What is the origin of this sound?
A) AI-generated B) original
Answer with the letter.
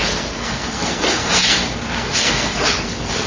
A